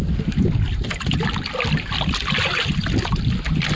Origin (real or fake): real